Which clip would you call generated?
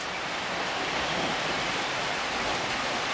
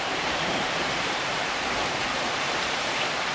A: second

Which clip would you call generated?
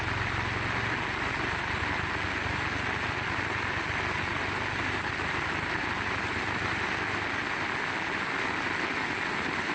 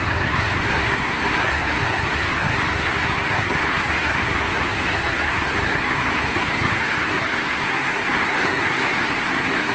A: second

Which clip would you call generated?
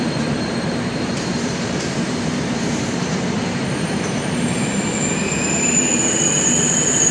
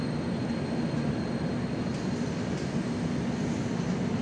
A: first